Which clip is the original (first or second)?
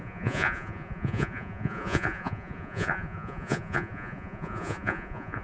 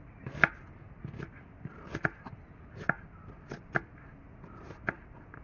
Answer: second